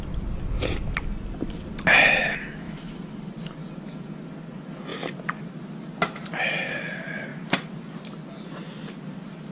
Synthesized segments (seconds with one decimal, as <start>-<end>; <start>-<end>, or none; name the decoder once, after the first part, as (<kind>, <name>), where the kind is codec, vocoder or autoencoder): 2.2-2.9 (autoencoder, DAC-VAE)